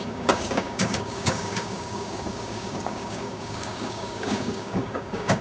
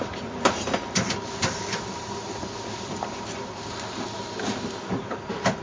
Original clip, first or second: second